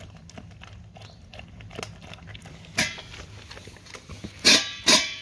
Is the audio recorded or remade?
recorded